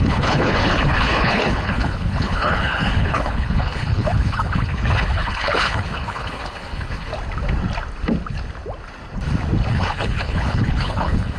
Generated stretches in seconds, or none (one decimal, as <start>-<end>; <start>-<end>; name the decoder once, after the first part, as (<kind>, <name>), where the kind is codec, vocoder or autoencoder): 0.0-7.1 (codec, HILCodec); 9.7-11.4